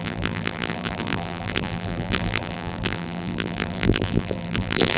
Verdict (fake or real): fake